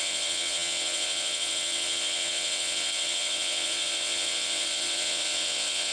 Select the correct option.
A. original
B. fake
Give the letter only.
B